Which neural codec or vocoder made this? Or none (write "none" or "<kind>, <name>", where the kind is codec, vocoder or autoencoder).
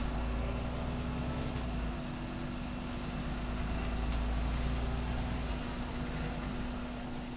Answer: none